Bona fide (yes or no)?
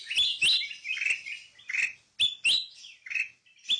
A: yes